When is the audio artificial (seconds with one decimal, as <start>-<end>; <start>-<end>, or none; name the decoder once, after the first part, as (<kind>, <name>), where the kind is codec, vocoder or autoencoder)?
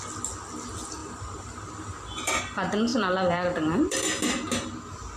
1.0-2.4 (vocoder, BigVGAN v2); 2.9-4.2